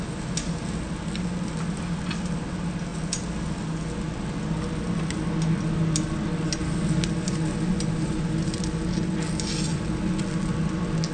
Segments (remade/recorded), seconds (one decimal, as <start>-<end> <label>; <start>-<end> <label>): 0.0-11.1 recorded